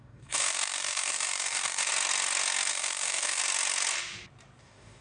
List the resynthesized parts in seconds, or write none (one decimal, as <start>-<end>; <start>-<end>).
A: 0.0-1.9; 2.7-3.4; 4.6-5.0